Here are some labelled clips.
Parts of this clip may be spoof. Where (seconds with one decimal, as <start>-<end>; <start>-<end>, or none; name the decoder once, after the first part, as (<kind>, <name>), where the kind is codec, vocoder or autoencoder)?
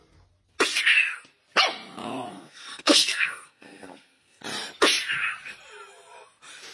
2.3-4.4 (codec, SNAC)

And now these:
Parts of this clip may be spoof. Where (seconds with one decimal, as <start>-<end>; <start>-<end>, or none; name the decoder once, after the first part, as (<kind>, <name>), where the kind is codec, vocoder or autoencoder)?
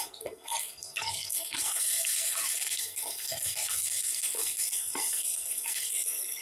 0.0-6.4 (codec, SNAC)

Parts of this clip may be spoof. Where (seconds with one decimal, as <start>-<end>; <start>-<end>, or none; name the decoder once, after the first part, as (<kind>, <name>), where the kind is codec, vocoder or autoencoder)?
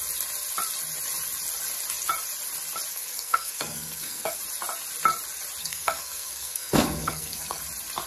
2.9-4.4 (codec, SNAC); 5.6-7.6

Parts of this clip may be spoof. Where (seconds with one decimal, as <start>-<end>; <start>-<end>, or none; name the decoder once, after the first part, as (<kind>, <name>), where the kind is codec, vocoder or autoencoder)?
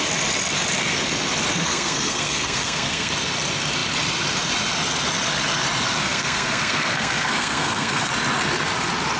1.5-3.1 (codec, SNAC); 6.0-8.1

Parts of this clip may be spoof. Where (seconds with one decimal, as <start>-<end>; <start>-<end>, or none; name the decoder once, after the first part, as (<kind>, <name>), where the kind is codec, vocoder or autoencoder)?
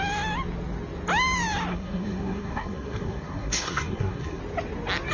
1.7-4.4 (codec, SNAC)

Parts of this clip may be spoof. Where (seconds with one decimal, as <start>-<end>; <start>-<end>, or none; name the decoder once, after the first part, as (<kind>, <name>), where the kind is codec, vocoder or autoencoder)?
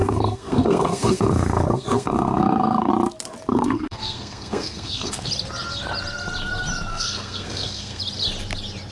0.0-2.9 (codec, SNAC); 3.5-5.3; 6.9-8.0